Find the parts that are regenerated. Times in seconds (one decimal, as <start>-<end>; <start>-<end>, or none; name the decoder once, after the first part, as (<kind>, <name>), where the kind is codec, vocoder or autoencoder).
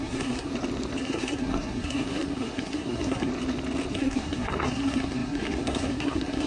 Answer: 0.0-0.5 (codec, SNAC); 1.0-3.3; 3.9-6.5